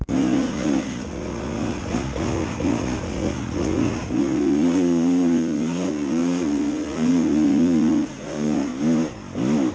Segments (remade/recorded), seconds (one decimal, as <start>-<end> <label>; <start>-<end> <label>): 0.0-8.7 remade; 8.7-9.7 recorded